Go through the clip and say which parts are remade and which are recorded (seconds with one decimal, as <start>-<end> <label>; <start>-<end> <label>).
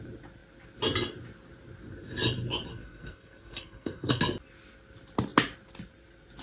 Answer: 0.0-2.7 recorded; 2.7-4.2 remade; 4.2-6.4 recorded